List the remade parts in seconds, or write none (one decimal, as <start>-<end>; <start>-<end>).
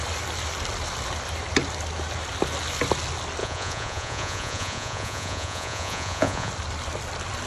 3.4-6.5